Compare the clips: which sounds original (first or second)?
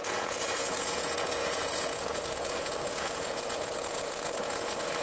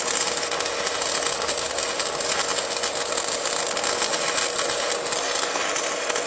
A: second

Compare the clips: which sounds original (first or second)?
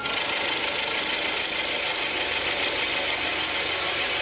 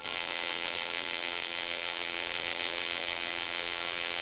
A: first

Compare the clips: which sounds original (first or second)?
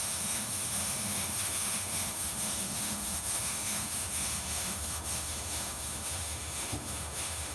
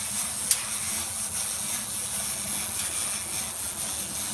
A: second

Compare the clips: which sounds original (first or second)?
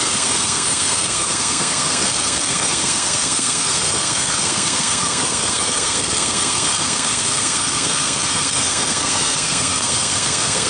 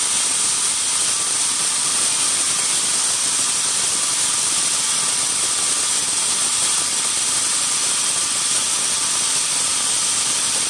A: second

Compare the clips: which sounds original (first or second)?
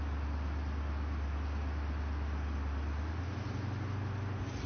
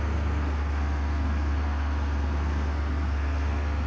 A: first